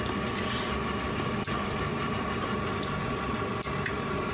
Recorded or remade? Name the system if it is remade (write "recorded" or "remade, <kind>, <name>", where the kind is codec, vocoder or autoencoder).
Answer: recorded